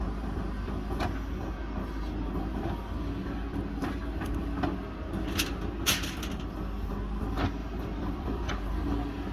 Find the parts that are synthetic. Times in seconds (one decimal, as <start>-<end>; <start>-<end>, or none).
7.6-8.5